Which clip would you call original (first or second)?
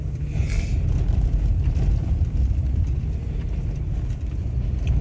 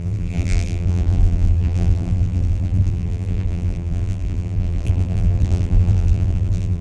first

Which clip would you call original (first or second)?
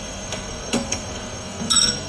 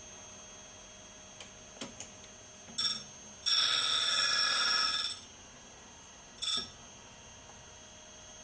second